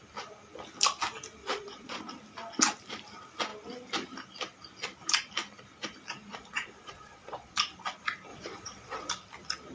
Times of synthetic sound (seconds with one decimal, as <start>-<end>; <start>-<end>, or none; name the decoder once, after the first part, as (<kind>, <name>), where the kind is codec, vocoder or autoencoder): 1.4-2.0 (vocoder, Vocos); 6.2-7.5; 8.3-9.1